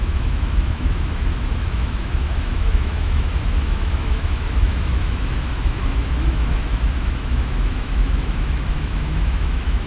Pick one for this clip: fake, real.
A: fake